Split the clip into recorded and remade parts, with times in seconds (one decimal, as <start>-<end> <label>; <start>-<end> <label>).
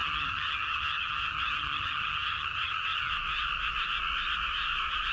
0.0-3.1 remade; 3.1-5.1 recorded